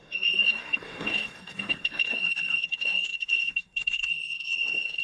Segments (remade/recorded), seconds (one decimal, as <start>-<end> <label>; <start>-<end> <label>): 0.0-5.0 remade